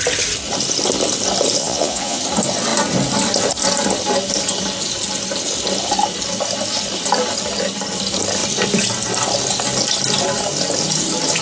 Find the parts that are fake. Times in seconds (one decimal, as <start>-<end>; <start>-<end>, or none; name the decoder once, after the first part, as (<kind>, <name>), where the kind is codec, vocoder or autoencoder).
1.6-2.2 (vocoder, Vocos)